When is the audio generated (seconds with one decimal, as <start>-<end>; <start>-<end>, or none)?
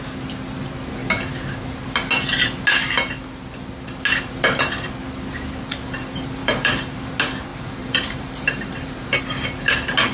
6.4-7.0; 7.5-9.2